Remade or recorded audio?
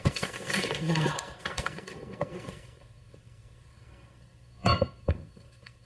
remade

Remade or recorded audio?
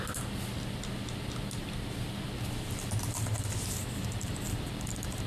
remade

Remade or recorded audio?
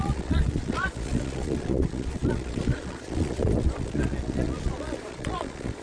remade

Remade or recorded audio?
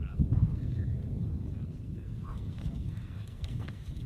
remade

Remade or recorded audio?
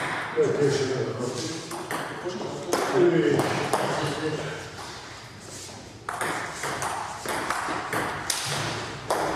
recorded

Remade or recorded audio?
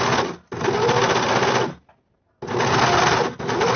recorded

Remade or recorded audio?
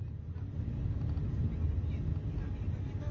recorded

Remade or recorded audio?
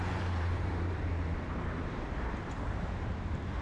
remade